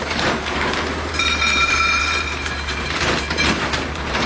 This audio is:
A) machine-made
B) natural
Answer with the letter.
A